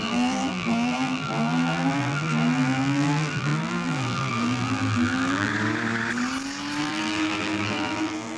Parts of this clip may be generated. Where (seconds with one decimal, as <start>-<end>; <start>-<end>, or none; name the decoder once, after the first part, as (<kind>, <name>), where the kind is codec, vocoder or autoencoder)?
0.0-5.5 (vocoder, BigVGAN v2); 6.8-8.4